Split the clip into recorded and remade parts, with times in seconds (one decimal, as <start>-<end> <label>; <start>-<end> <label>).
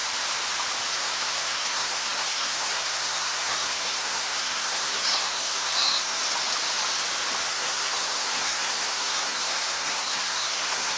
0.0-0.9 recorded; 0.9-6.2 remade; 6.2-7.5 recorded; 7.5-11.0 remade